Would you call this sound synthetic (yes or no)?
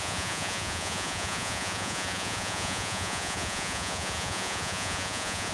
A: yes